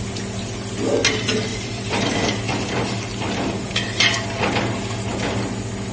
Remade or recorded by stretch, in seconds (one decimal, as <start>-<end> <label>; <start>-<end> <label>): 0.0-1.5 recorded; 1.5-3.7 remade; 3.7-5.9 recorded